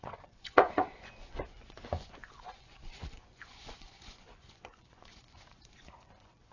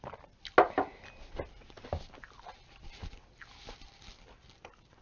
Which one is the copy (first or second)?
first